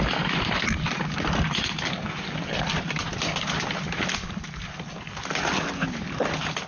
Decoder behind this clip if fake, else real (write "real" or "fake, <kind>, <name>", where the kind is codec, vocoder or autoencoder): real